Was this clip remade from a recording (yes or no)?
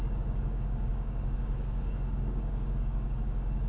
yes